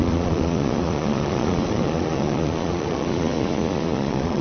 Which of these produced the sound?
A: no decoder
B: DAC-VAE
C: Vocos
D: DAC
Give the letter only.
C